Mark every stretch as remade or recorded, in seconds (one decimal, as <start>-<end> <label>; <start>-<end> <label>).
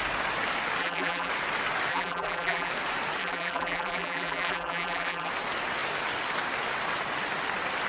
0.0-0.8 recorded; 0.8-1.3 remade; 1.3-1.9 recorded; 1.9-2.7 remade; 2.7-3.2 recorded; 3.2-5.3 remade; 5.3-7.9 recorded